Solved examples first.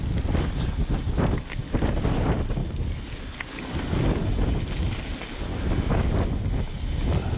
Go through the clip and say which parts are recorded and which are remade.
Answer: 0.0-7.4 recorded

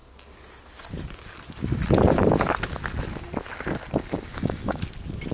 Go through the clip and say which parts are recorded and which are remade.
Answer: 0.0-4.3 recorded; 4.3-4.8 remade; 4.8-5.3 recorded

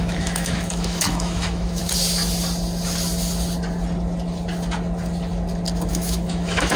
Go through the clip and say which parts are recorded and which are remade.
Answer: 0.0-1.8 remade; 1.8-5.9 recorded; 5.9-6.8 remade

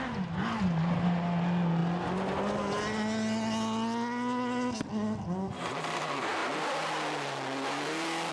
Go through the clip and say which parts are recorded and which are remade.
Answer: 0.0-8.3 recorded